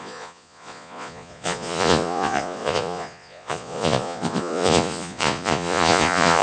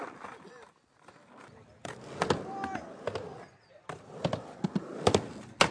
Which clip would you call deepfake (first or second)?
first